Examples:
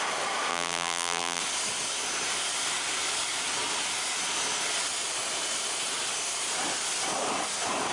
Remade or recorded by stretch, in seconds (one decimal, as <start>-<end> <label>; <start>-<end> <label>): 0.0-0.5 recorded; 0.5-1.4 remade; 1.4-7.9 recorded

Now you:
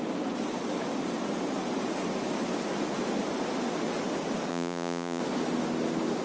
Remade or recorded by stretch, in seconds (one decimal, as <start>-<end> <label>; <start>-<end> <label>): 0.0-4.5 recorded; 4.5-5.2 remade; 5.2-6.2 recorded

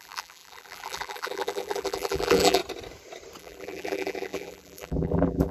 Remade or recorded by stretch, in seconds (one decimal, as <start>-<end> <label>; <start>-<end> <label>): 0.0-2.6 remade; 2.6-3.4 recorded; 3.4-5.5 remade

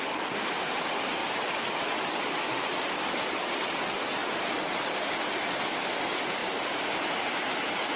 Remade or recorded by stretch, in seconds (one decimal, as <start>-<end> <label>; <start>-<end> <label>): 0.0-8.0 recorded

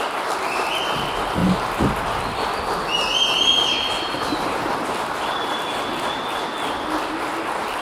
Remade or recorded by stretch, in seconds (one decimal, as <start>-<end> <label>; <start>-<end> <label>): 0.0-7.8 recorded

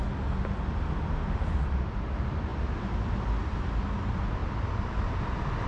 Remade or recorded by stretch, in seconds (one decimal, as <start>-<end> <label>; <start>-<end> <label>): 0.0-5.7 recorded